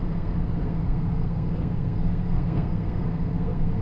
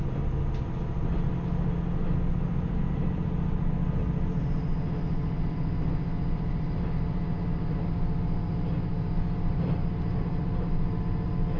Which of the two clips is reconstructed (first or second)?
first